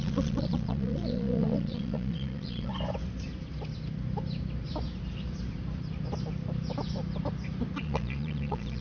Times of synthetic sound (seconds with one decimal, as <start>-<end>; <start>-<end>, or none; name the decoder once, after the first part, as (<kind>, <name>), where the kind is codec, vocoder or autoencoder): 0.0-2.7 (vocoder, Vocos); 7.8-8.8